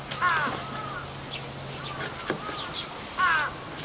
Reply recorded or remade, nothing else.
recorded